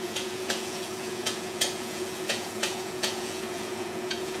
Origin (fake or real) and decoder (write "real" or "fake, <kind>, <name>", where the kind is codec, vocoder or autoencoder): fake, vocoder, Vocos